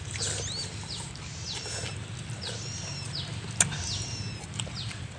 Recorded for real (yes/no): yes